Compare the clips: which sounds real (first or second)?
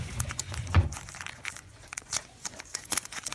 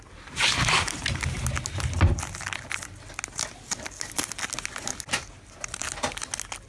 second